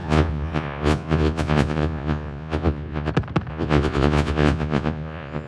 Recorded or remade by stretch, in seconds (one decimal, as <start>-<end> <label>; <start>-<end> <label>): 0.0-3.1 remade; 3.1-3.5 recorded; 3.5-5.5 remade